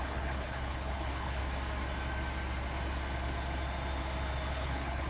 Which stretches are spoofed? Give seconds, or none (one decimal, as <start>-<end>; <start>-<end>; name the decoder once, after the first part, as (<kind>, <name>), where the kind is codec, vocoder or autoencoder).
0.0-1.4 (codec, HILCodec); 4.5-5.1